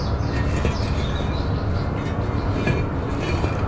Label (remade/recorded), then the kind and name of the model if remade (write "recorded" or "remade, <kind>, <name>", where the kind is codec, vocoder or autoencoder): recorded